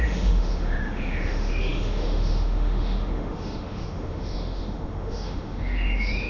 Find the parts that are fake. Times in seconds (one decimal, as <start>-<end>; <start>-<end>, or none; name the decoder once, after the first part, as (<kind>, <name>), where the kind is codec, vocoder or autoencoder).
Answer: 0.0-6.3 (autoencoder, DAC-VAE)